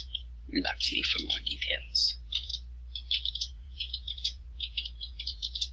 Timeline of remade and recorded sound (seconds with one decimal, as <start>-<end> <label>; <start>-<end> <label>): 0.0-2.5 remade; 2.5-3.3 recorded; 3.3-5.7 remade